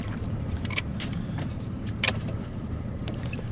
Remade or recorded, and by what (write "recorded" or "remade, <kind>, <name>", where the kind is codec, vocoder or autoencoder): remade, vocoder, BigVGAN v2